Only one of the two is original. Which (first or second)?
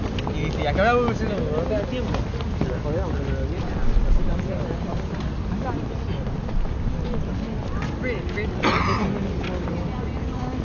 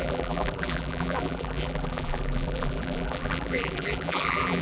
first